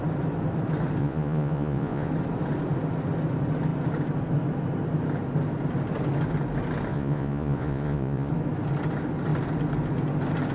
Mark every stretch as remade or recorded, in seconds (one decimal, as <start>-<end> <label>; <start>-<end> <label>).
0.0-1.0 recorded; 1.0-2.1 remade; 2.1-6.9 recorded; 6.9-8.3 remade; 8.3-10.5 recorded